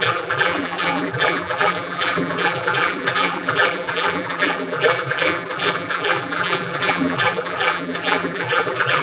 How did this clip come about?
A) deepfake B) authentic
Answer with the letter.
A